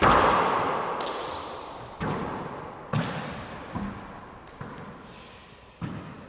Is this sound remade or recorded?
recorded